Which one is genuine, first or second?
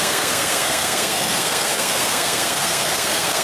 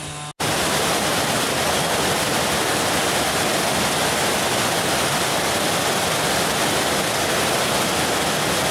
second